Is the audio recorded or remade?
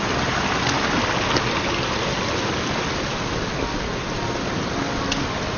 recorded